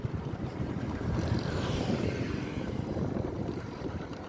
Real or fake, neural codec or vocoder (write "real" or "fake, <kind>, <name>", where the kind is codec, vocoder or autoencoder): fake, vocoder, BigVGAN v2